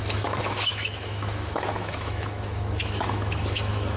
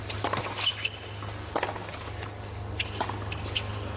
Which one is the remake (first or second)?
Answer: first